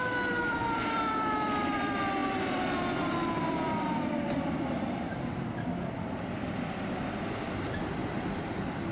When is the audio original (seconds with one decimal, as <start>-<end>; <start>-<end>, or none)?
none